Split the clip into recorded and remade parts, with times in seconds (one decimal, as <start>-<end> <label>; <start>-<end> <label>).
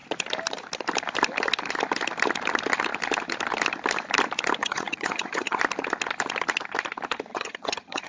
0.0-4.6 recorded; 4.6-5.6 remade; 5.6-7.3 recorded; 7.3-8.1 remade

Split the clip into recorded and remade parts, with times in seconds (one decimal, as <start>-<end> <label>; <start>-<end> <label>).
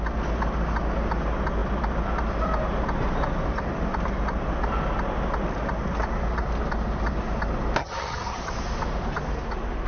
0.0-7.8 recorded; 7.8-8.5 remade; 8.5-9.9 recorded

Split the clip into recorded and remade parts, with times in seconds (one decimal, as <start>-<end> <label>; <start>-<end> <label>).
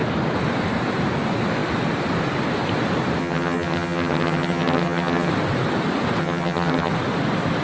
0.0-3.2 recorded; 3.2-5.3 remade; 5.3-6.2 recorded; 6.2-6.9 remade; 6.9-7.6 recorded